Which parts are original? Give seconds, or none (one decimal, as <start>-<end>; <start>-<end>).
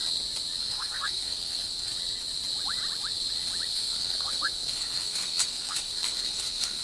0.0-0.6; 1.9-3.7